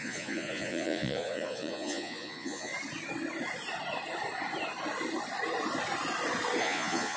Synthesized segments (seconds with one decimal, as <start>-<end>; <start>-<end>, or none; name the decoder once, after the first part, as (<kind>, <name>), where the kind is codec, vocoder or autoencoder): 0.0-2.7 (vocoder, Vocos); 6.6-7.2